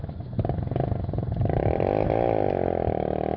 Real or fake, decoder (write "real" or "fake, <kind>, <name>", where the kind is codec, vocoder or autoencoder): real